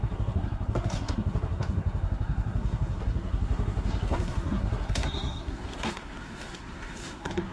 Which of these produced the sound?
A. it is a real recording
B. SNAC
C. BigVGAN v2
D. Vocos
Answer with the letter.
B